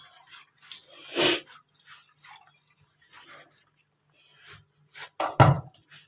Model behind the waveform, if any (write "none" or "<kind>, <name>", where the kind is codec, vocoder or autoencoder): none